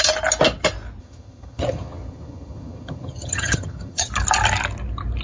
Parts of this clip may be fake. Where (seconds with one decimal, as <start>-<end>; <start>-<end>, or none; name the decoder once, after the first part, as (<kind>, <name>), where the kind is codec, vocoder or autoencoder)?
1.0-4.1 (vocoder, HiFi-GAN)